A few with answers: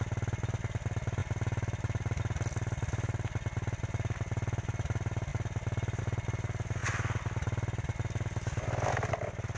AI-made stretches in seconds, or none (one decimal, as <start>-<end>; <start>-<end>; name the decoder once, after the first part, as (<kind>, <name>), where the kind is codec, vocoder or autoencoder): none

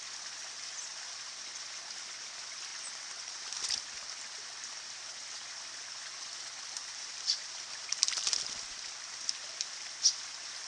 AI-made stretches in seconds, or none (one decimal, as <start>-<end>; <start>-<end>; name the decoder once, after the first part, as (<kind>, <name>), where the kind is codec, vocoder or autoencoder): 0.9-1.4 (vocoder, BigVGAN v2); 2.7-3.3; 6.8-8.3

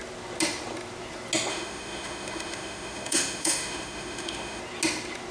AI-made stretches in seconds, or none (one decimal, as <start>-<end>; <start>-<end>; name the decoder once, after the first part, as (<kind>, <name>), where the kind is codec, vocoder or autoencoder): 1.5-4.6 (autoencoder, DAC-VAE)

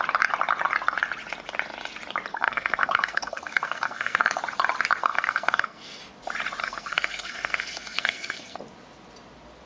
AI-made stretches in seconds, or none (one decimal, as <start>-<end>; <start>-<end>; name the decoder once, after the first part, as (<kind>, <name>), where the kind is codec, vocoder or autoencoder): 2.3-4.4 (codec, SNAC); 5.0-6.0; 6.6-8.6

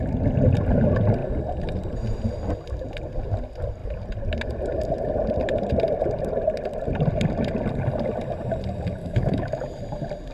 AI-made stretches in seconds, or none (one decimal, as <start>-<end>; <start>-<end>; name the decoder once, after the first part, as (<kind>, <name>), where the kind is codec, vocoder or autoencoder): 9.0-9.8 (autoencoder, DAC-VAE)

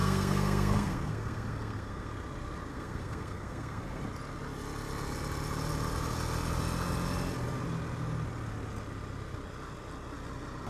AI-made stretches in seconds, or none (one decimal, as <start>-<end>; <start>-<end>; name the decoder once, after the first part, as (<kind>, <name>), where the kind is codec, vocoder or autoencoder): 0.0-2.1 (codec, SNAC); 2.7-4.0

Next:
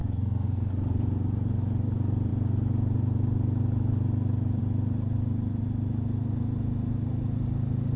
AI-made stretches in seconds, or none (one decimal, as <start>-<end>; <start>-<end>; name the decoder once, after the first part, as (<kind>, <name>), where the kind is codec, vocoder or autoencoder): 0.0-0.7 (codec, SNAC)